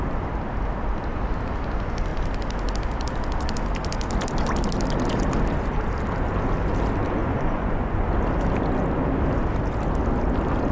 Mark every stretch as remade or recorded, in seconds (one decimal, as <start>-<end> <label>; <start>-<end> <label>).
0.0-7.2 recorded; 7.2-8.1 remade; 8.1-10.7 recorded